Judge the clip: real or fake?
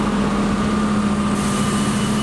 real